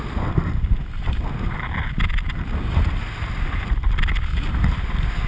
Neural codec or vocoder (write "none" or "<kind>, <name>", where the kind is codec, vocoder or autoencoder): none